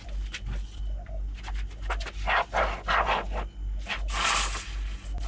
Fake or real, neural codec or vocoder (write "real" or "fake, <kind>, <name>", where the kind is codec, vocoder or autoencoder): real